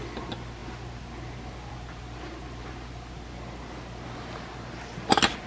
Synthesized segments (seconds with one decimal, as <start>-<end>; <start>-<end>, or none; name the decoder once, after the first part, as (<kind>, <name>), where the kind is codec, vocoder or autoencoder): none